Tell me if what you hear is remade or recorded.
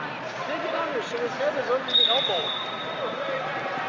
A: recorded